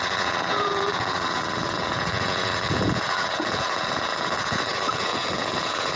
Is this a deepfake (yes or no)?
yes